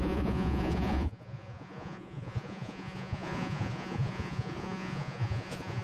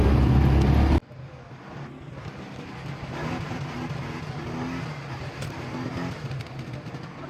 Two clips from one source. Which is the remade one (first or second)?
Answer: first